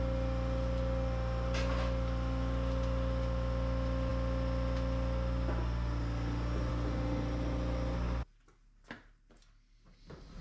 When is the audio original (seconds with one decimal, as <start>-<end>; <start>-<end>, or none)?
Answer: 0.0-10.4

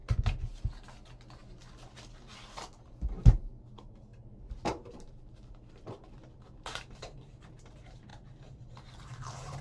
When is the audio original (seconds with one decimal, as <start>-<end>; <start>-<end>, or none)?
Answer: 0.0-2.8

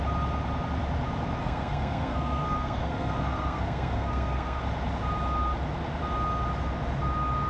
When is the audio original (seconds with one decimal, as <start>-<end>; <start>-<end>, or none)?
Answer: 0.0-1.4; 4.6-7.5

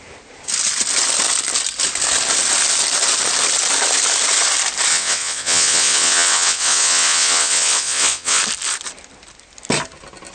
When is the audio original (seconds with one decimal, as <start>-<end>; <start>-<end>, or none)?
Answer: 0.0-4.9; 8.4-10.3

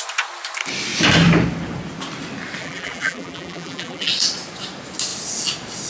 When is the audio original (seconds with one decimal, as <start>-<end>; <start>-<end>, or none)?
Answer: 0.0-2.6; 4.1-5.9

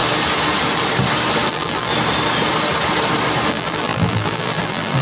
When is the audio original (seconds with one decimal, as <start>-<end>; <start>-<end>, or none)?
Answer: 0.0-1.5; 1.9-3.5

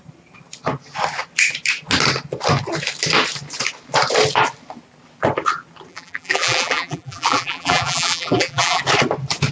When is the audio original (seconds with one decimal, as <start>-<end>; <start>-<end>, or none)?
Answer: 0.0-5.9; 8.8-9.5

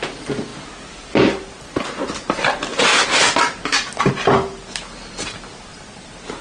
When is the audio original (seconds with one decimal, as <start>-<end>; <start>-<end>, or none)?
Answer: 2.9-5.6